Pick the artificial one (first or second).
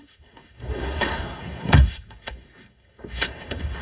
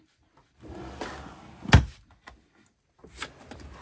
first